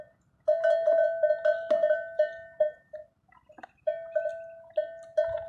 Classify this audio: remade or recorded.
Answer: recorded